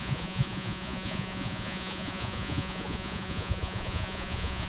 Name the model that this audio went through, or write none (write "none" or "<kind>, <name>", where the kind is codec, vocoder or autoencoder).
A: vocoder, Vocos